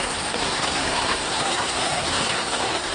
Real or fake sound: fake